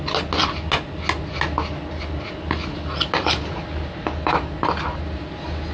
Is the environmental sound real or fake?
real